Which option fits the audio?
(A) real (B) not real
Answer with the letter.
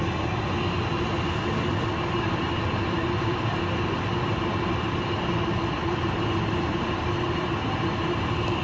A